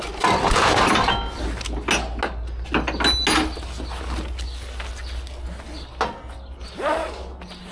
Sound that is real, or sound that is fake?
real